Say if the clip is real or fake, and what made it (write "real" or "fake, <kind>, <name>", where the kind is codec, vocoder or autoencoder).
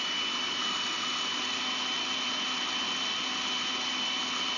real